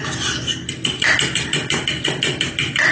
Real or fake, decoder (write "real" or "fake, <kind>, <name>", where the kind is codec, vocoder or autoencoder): real